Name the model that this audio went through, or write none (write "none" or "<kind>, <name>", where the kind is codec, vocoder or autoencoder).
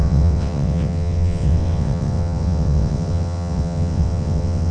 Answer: vocoder, WaveNeXt